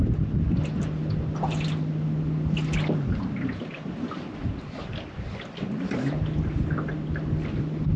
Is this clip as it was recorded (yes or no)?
yes